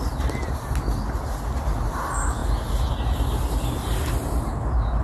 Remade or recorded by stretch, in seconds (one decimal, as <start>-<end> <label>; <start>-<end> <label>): 0.0-5.0 recorded